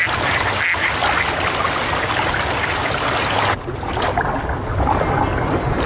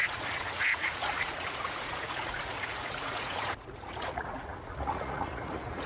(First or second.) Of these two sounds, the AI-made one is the second